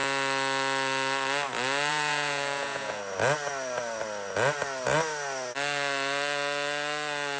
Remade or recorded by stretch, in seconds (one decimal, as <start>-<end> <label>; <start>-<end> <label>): 0.0-1.9 recorded; 1.9-3.0 remade; 3.0-7.4 recorded